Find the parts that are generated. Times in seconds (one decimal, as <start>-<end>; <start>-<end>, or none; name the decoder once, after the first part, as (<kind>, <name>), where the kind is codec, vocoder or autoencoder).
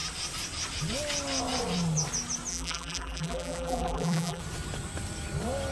2.5-4.4 (vocoder, BigVGAN v2)